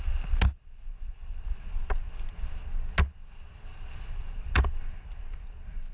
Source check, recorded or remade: recorded